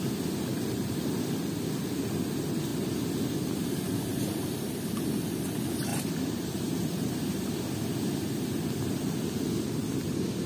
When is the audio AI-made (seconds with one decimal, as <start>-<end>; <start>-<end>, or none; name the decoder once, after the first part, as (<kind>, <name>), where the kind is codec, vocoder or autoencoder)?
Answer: 0.5-1.1 (vocoder, BigVGAN v2); 5.9-7.1